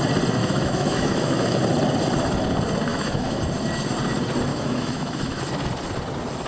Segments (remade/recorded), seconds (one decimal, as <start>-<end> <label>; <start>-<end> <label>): 0.0-0.4 recorded; 0.4-1.6 remade; 1.6-2.9 recorded; 2.9-3.4 remade; 3.4-4.5 recorded; 4.5-5.4 remade; 5.4-6.5 recorded